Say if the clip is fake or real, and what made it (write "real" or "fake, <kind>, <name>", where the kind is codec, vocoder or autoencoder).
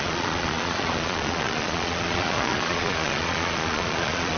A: fake, vocoder, Vocos